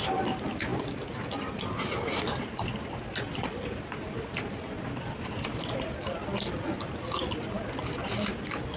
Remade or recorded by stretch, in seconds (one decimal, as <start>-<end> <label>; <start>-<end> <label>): 0.0-8.8 recorded